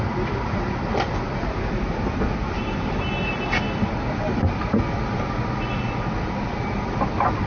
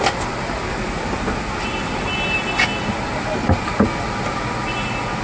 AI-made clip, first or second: first